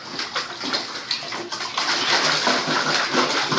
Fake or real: real